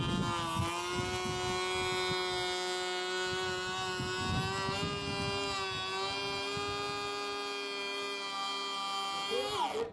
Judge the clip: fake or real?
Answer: real